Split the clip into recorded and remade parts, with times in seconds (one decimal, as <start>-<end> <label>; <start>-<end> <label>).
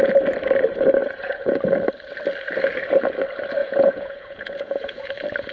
0.0-1.0 recorded; 1.0-1.6 remade; 1.6-3.6 recorded; 3.6-5.1 remade; 5.1-5.5 recorded